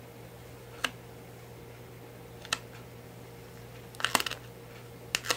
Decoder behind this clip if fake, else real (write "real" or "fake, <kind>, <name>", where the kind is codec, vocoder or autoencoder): real